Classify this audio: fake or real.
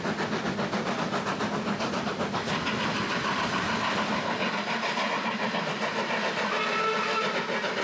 real